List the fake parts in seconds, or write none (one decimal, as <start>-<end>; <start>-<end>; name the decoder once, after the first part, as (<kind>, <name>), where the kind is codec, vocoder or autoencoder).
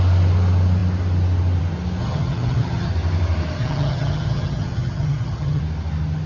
2.0-2.9 (vocoder, HiFi-GAN); 3.6-5.6